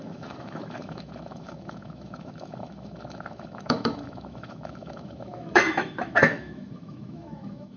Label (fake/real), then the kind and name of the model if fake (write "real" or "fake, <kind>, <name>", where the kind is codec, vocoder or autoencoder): fake, autoencoder, DAC-VAE